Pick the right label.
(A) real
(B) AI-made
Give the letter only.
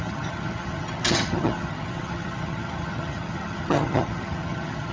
B